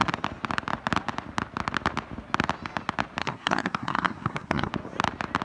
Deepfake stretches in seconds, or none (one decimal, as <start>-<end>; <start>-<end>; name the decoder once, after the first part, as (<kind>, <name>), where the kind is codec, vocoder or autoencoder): 3.2-4.7 (codec, SNAC)